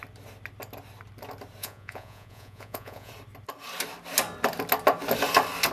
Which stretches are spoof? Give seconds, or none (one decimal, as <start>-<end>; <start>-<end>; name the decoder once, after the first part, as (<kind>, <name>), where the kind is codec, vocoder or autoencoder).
1.6-3.1 (vocoder, Vocos)